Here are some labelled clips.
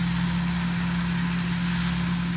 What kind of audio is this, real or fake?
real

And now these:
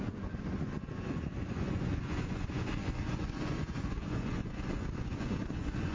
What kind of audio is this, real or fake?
fake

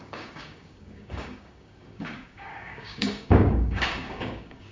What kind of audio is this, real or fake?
fake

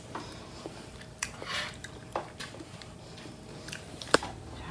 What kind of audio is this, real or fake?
fake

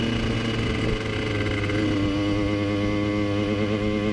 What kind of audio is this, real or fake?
real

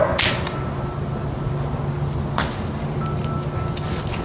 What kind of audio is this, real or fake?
real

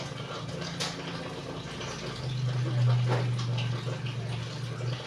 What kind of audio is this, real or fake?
real